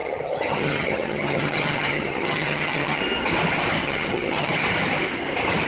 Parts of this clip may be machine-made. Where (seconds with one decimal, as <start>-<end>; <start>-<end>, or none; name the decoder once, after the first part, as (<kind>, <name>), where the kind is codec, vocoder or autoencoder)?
0.0-3.0 (vocoder, HiFi-GAN); 3.8-4.5